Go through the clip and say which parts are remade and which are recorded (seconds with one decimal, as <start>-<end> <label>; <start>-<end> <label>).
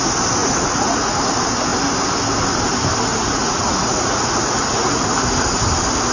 0.0-0.4 recorded; 0.4-1.2 remade; 1.2-3.1 recorded; 3.1-5.1 remade; 5.1-6.1 recorded